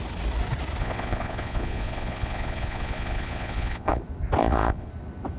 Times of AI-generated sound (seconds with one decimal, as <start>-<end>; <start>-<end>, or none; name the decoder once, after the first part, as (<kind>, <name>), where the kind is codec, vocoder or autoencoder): 0.8-4.0 (vocoder, Vocos); 4.4-4.9

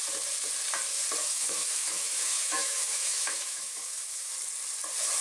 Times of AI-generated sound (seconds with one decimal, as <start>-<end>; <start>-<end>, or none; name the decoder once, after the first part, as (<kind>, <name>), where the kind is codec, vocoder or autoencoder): 1.2-4.3 (autoencoder, DAC-VAE)

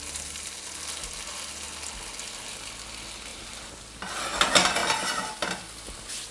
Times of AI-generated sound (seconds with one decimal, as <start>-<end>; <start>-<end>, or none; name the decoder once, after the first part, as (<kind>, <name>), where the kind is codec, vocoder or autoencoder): 3.3-3.8 (vocoder, BigVGAN v2)

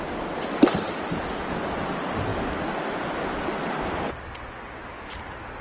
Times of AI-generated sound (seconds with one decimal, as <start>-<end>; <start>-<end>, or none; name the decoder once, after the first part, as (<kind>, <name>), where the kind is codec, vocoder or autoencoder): none

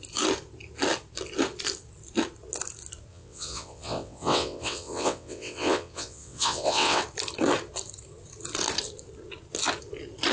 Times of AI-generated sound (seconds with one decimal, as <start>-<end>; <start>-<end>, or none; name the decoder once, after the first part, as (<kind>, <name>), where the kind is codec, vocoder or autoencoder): 3.1-7.0 (vocoder, WaveNeXt)

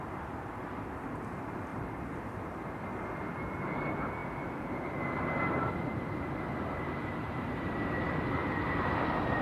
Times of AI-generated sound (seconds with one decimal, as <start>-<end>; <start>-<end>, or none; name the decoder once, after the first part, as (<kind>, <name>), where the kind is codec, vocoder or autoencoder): 1.7-2.3 (vocoder, BigVGAN v2)